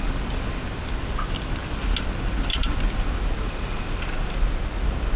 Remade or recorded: recorded